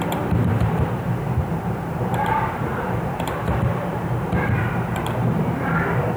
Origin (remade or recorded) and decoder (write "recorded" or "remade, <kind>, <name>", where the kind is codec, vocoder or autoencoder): remade, vocoder, BigVGAN v2